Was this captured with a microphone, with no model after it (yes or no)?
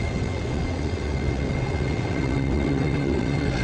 no